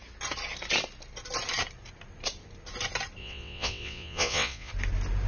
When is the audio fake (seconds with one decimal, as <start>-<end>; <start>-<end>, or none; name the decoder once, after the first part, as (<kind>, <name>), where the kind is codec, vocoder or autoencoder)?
3.2-4.7 (vocoder, WaveNeXt)